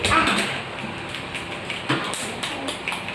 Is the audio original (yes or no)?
no